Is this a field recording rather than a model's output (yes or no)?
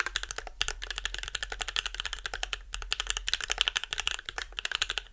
no